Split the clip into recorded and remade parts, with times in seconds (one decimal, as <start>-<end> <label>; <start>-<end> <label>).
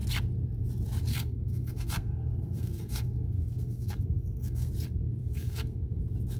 0.0-1.1 recorded; 1.1-4.7 remade; 4.7-5.2 recorded; 5.2-6.0 remade; 6.0-6.4 recorded